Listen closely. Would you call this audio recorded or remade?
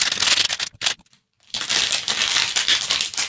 recorded